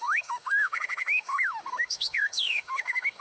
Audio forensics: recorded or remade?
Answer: remade